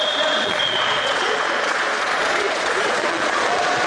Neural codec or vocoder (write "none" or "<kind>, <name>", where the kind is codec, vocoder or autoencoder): vocoder, Vocos